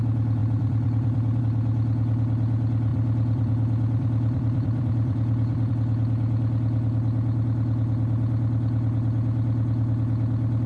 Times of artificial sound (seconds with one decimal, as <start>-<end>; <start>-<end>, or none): 0.4-1.4; 2.9-5.7